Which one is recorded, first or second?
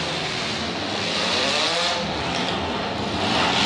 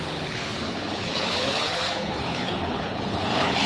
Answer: first